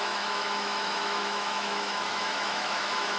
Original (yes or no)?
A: no